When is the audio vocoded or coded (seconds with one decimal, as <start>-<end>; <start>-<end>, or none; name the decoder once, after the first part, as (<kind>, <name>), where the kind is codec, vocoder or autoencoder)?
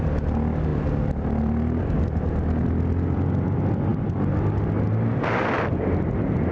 none